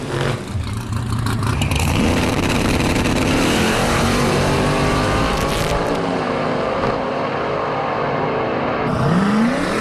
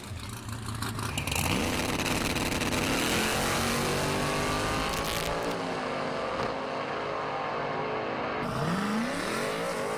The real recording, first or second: second